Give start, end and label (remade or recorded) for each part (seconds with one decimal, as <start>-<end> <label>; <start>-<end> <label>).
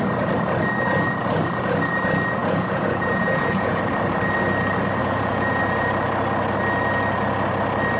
0.0-2.4 recorded; 2.4-3.8 remade; 3.8-5.0 recorded; 5.0-5.6 remade; 5.6-8.0 recorded